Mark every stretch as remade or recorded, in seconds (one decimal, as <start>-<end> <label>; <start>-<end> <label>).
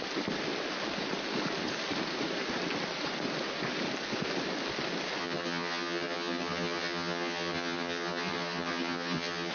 0.0-5.2 recorded; 5.2-9.5 remade